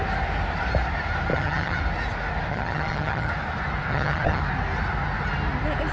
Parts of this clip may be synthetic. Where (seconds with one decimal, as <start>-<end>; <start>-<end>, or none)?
1.3-1.8; 2.5-3.3; 3.9-4.4